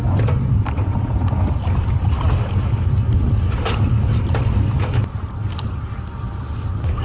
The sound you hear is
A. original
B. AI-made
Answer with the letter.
A